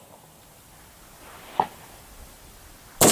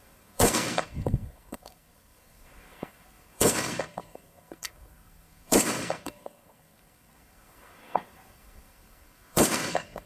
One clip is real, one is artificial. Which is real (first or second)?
first